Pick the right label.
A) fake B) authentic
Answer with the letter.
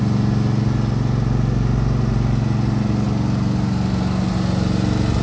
B